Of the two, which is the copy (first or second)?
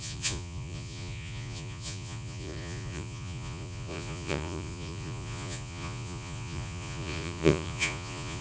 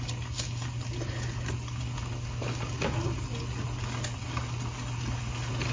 first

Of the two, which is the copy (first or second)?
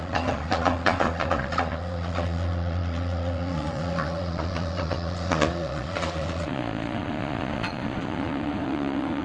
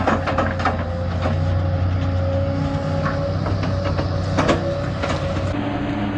first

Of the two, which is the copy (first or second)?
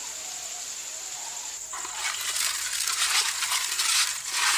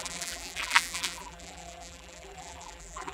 second